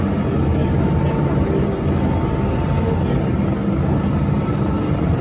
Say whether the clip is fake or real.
real